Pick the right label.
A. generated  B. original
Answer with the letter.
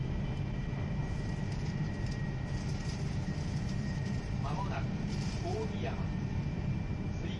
A